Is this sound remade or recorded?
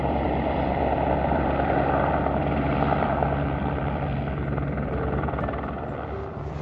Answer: remade